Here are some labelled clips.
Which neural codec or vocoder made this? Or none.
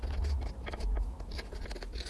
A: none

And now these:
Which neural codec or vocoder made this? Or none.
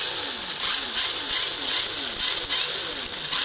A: none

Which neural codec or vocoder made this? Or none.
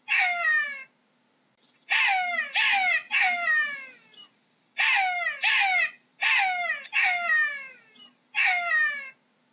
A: none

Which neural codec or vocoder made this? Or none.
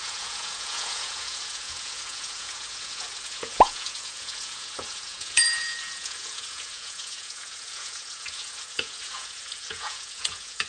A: vocoder, Vocos